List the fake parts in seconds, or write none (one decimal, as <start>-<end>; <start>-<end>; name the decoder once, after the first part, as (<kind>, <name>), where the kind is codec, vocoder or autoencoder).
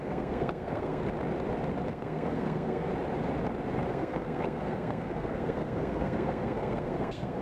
0.0-1.0 (codec, SNAC); 1.9-2.9; 3.9-7.4